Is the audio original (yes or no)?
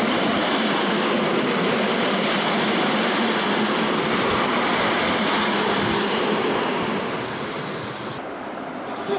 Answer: no